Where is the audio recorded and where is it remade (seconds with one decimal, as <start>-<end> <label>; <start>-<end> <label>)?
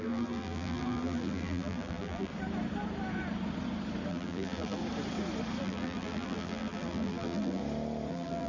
0.0-2.3 remade; 2.3-4.1 recorded; 4.1-4.8 remade; 4.8-5.6 recorded; 5.6-7.6 remade; 7.6-8.1 recorded; 8.1-8.5 remade